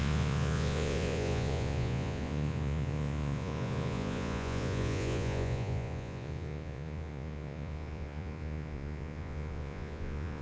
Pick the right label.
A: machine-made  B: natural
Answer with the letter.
A